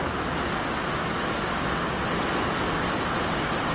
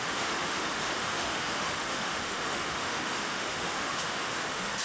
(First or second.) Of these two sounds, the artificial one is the second